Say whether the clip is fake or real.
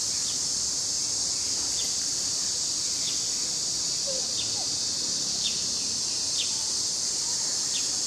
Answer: real